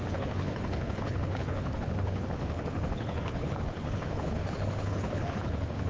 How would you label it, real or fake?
fake